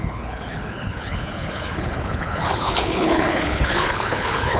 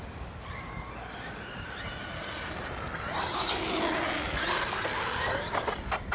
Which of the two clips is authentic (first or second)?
second